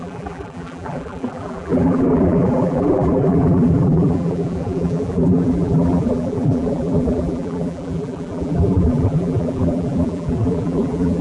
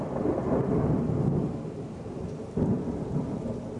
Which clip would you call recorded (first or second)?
second